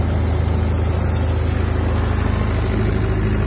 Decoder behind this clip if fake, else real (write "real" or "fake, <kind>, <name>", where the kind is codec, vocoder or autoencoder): real